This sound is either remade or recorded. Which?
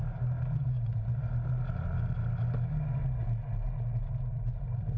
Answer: recorded